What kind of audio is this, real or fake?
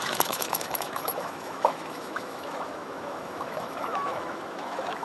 fake